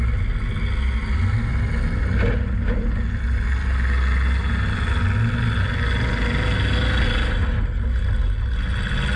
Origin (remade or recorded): recorded